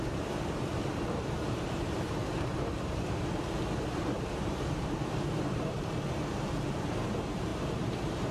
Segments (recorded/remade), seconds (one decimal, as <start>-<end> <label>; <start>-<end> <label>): 0.0-0.7 remade; 0.7-1.2 recorded; 1.2-2.5 remade; 2.5-3.9 recorded; 3.9-8.3 remade